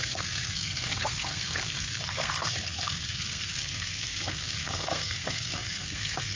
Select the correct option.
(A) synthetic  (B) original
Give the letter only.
A